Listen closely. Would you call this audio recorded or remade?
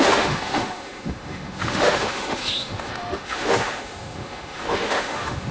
remade